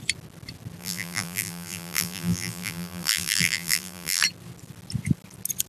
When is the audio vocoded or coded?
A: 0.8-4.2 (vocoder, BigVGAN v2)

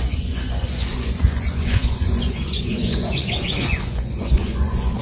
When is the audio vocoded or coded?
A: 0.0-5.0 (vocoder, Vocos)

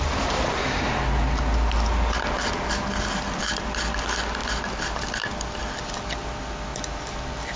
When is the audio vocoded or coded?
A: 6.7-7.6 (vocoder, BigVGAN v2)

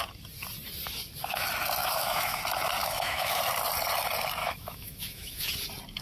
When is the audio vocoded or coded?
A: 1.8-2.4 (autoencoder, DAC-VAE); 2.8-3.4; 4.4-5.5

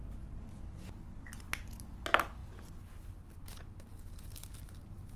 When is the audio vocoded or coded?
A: none

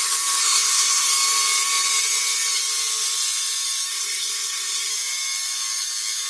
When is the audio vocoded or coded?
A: 0.4-1.1 (codec, SNAC); 3.9-4.9

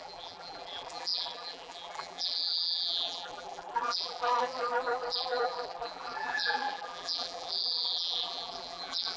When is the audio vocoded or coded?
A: 0.0-9.2 (vocoder, BigVGAN v2)